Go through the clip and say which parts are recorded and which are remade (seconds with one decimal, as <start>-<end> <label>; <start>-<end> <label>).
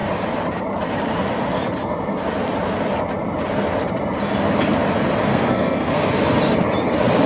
0.0-5.3 recorded; 5.3-6.1 remade; 6.1-7.3 recorded